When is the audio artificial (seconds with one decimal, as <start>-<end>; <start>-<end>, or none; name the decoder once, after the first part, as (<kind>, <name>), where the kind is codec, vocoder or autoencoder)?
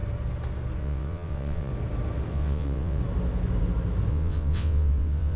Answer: 0.8-1.7 (vocoder, WaveNeXt); 2.3-3.0; 4.1-5.4